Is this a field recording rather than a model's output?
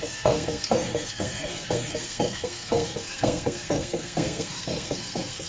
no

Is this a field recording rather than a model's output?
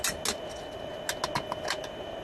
yes